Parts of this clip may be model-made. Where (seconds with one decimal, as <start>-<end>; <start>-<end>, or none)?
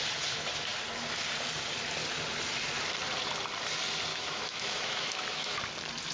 4.1-5.6